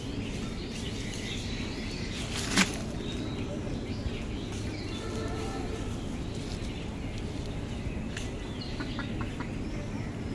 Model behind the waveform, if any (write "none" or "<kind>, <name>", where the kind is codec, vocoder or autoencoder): none